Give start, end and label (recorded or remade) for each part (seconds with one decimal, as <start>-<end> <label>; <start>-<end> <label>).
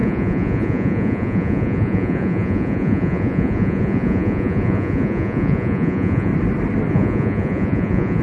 0.0-6.3 remade; 6.3-6.9 recorded; 6.9-8.2 remade